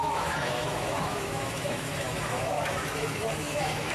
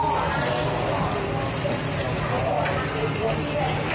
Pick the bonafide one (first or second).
second